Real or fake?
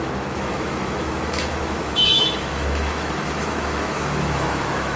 fake